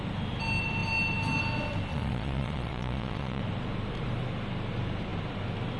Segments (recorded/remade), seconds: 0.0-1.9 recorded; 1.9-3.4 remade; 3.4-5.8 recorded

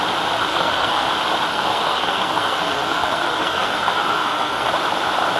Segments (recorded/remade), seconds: 0.0-0.5 recorded; 0.5-1.1 remade; 1.1-1.5 recorded; 1.5-4.7 remade; 4.7-5.4 recorded

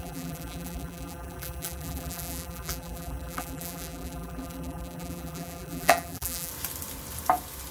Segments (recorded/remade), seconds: 0.0-6.5 remade; 6.5-7.7 recorded

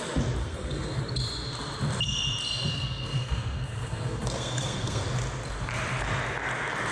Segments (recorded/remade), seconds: 0.0-0.4 recorded; 0.4-1.0 remade; 1.0-2.7 recorded; 2.7-5.0 remade; 5.0-6.9 recorded

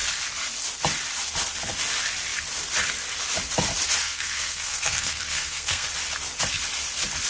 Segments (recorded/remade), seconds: 0.0-4.0 recorded; 4.0-5.9 remade; 5.9-7.3 recorded